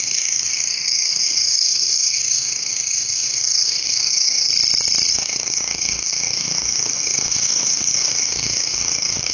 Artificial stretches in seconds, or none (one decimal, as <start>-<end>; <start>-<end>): 0.0-4.5; 5.1-9.3